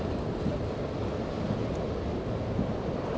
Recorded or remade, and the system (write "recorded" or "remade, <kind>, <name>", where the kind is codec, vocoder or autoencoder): recorded